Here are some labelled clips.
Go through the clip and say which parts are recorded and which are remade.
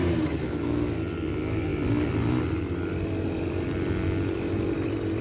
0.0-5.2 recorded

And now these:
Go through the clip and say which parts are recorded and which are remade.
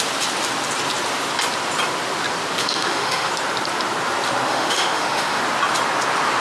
0.0-2.6 recorded; 2.6-3.3 remade; 3.3-4.5 recorded; 4.5-5.4 remade; 5.4-6.4 recorded